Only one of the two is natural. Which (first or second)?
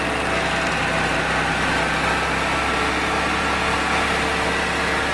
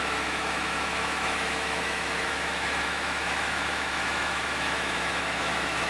first